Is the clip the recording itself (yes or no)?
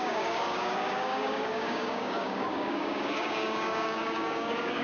no